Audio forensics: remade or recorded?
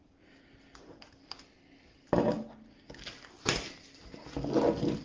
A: recorded